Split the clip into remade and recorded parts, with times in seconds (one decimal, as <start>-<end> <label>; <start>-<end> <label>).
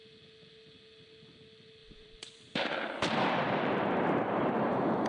0.0-1.8 recorded; 1.8-5.1 remade